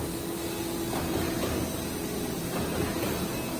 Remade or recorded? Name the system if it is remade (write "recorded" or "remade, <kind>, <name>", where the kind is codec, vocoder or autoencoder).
recorded